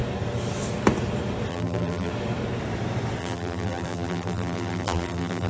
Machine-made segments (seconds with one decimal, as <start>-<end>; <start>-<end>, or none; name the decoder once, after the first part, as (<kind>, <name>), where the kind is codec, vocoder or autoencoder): 1.5-2.1 (vocoder, BigVGAN v2); 3.2-5.5